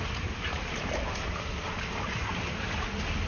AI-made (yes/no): no